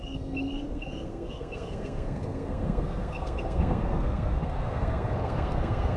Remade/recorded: remade